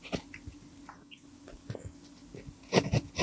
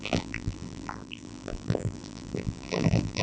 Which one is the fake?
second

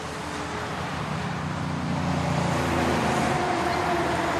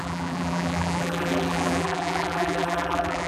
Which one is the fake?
second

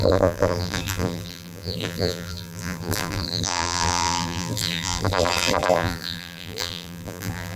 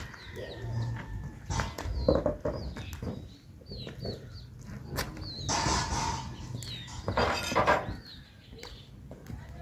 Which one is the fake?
first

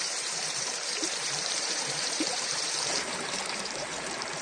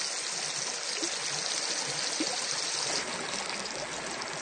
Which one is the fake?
first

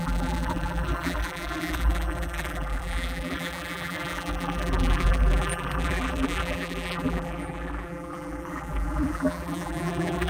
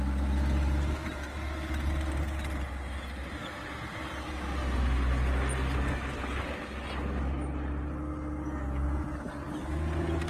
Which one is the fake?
first